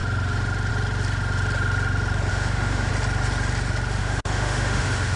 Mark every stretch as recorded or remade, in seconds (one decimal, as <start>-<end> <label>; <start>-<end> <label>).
0.0-2.3 recorded; 2.3-2.9 remade; 2.9-4.0 recorded; 4.0-5.2 remade